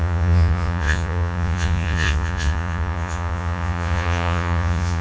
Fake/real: fake